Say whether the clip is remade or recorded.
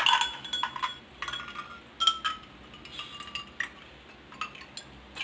recorded